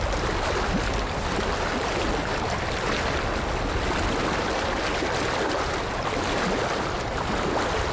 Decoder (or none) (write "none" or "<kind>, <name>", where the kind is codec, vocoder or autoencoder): none